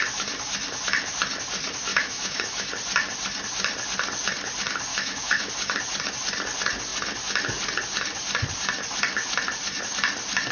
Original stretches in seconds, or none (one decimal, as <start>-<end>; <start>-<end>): 0.0-1.9; 2.7-4.9; 5.5-10.5